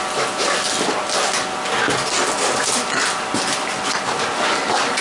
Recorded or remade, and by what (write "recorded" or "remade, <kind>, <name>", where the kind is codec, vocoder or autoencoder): recorded